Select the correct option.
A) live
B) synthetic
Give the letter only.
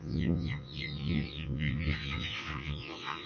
B